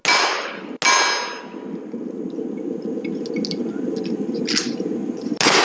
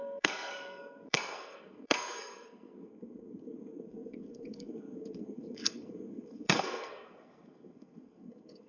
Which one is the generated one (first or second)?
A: second